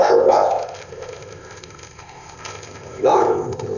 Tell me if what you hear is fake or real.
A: fake